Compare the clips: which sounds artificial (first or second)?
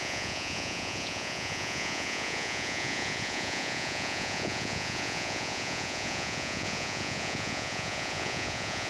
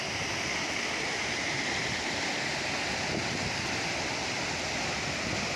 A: first